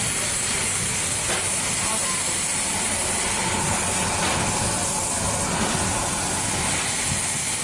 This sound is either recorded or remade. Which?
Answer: recorded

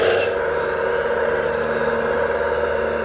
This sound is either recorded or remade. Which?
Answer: recorded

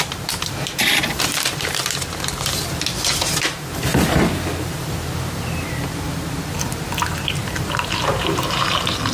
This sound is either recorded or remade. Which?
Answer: remade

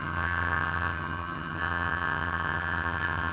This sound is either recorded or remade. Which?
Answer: remade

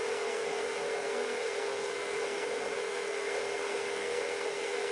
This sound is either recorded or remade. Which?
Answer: remade